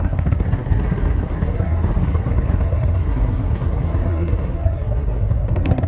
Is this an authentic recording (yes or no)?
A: no